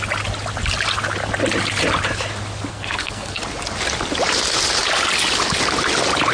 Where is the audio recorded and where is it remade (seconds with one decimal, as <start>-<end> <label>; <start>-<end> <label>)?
0.0-2.7 recorded; 2.7-3.4 remade; 3.4-6.3 recorded